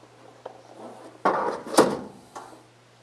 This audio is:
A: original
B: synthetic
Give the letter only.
A